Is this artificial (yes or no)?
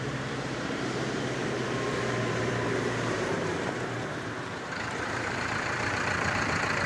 yes